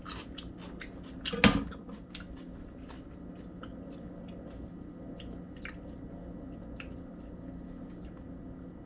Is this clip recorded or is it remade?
recorded